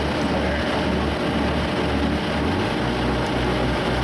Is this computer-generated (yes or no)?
no